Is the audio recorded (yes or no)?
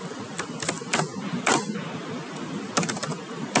yes